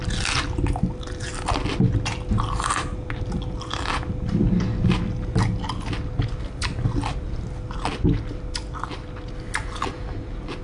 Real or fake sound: real